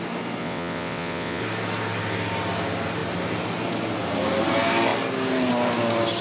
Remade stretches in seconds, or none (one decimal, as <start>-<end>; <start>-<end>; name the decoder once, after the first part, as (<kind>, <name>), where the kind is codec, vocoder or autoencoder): 0.4-1.4 (vocoder, WaveNeXt)